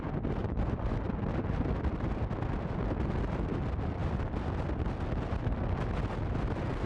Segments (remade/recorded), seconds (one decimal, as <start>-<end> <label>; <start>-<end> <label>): 0.0-0.4 recorded; 0.4-0.9 remade; 0.9-6.9 recorded